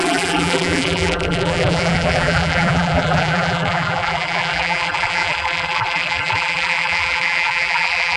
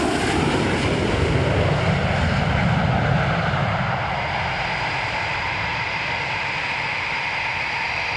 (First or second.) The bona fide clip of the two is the second